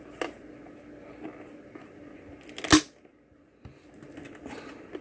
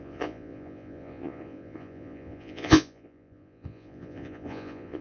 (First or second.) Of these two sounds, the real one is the first